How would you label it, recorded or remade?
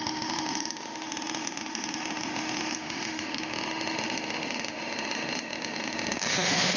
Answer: remade